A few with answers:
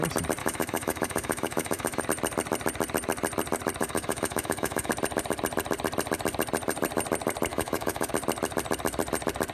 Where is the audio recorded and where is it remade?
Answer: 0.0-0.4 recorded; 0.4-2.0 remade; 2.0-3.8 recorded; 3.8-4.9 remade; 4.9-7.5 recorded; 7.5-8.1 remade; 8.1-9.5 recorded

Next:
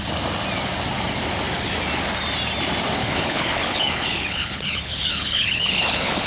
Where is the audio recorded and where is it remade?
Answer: 0.0-3.0 recorded; 3.0-6.3 remade

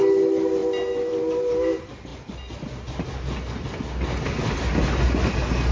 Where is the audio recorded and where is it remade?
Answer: 0.0-5.7 recorded